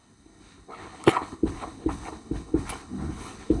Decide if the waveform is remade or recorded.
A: remade